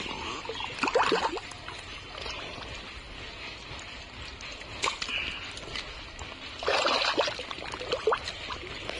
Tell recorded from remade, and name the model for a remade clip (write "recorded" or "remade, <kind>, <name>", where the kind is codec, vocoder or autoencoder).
recorded